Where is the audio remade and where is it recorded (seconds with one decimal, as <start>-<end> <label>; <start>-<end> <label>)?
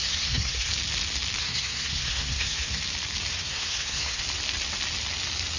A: 0.0-0.7 remade; 0.7-1.4 recorded; 1.4-2.8 remade; 2.8-3.3 recorded; 3.3-4.2 remade; 4.2-5.6 recorded